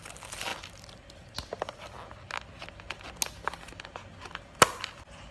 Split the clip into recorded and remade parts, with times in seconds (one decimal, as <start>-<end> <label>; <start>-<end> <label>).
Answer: 0.0-5.3 recorded